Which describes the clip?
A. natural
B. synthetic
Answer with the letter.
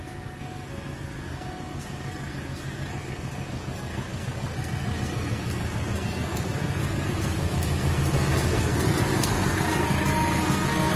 B